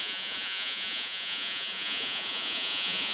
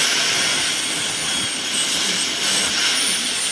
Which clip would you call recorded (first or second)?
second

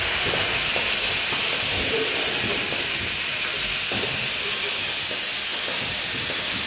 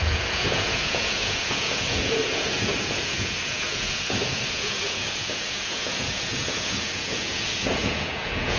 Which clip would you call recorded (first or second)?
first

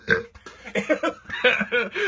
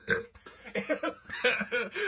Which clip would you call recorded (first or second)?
first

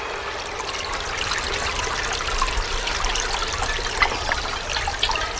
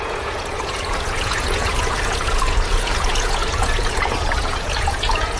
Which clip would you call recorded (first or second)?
first